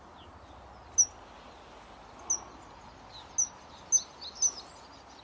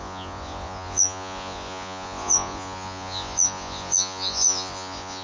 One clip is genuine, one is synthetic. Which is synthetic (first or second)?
second